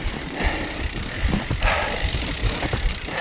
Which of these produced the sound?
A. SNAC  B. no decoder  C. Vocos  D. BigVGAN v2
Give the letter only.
B